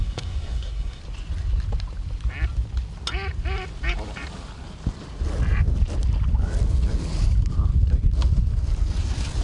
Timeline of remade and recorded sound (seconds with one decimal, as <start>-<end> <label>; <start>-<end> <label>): 0.0-1.0 remade; 1.0-9.4 recorded